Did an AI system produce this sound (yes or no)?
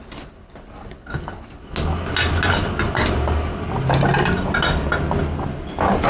no